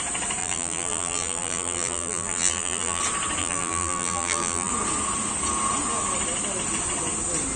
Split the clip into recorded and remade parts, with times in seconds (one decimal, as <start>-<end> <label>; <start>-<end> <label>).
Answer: 0.0-0.4 recorded; 0.4-3.0 remade; 3.0-3.4 recorded; 3.4-4.7 remade; 4.7-7.6 recorded